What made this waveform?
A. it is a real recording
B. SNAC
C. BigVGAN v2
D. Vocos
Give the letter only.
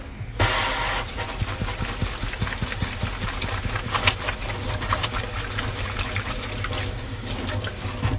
A